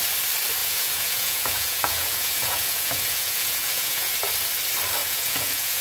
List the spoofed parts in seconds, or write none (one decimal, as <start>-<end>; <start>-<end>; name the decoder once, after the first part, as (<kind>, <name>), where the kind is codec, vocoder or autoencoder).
0.6-4.1 (vocoder, Vocos); 5.0-5.8